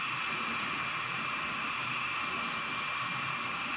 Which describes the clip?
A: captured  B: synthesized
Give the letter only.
B